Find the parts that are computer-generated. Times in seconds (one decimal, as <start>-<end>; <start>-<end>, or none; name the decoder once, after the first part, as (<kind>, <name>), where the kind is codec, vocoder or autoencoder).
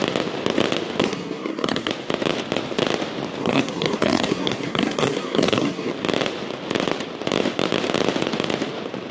1.0-1.9 (codec, SNAC); 3.4-5.9